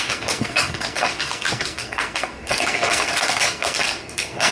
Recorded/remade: remade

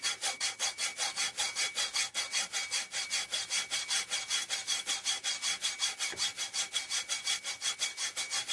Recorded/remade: recorded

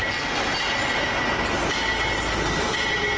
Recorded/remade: recorded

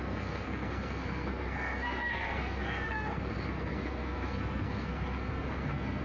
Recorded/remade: remade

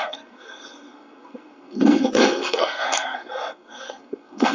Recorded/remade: remade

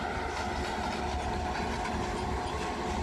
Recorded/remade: recorded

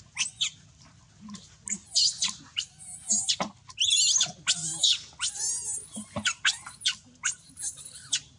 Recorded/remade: recorded